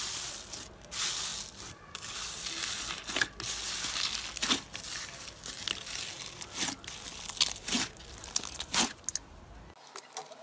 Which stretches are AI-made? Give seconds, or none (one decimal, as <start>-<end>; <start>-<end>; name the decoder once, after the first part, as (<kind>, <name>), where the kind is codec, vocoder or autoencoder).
none